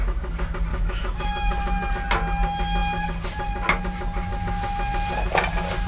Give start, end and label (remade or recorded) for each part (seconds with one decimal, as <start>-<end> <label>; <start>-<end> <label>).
0.0-0.7 recorded; 0.7-1.9 remade; 1.9-5.9 recorded